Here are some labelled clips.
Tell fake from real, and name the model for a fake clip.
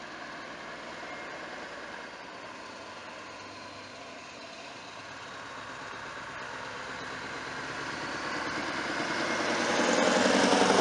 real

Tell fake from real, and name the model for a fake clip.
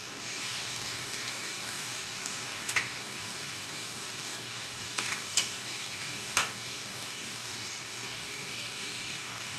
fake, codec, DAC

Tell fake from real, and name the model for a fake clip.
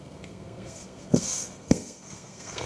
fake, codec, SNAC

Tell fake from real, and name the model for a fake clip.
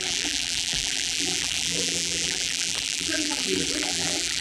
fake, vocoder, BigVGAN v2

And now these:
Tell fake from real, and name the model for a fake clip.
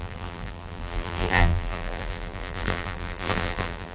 fake, vocoder, BigVGAN v2